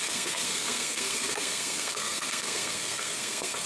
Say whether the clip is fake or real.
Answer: fake